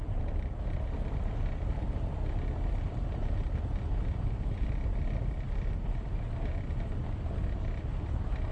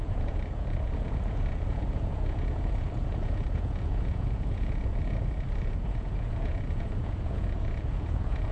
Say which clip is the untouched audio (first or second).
first